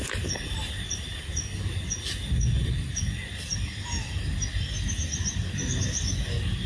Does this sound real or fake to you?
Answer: real